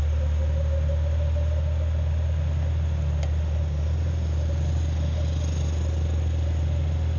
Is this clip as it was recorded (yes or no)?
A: yes